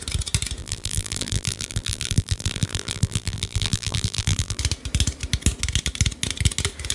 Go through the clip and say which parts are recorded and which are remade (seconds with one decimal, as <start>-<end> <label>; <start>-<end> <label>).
0.0-0.6 recorded; 0.6-4.6 remade; 4.6-6.9 recorded